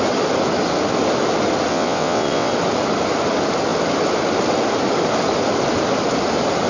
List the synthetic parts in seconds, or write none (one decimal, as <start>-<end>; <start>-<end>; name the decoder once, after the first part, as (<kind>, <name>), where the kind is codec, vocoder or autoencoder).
1.7-2.5 (vocoder, WaveNeXt)